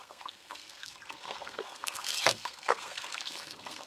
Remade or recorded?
remade